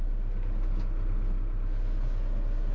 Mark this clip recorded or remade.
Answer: recorded